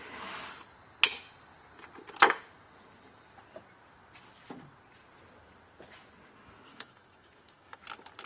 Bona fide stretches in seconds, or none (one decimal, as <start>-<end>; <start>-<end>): 0.0-6.7; 7.8-8.3